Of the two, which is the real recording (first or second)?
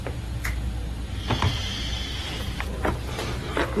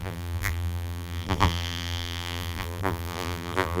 first